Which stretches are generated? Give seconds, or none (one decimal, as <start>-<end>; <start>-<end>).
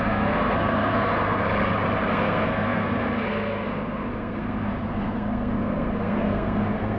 0.0-1.1; 2.1-7.0